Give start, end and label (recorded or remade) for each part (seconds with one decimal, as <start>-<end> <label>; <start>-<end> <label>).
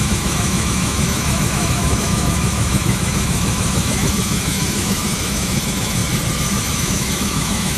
0.0-6.0 remade; 6.0-6.7 recorded; 6.7-7.8 remade